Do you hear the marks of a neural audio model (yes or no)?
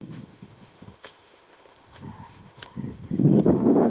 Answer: yes